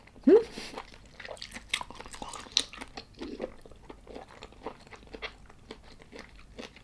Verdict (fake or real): real